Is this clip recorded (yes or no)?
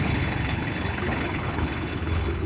no